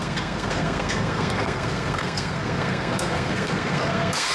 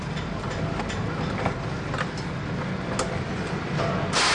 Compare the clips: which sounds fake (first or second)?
first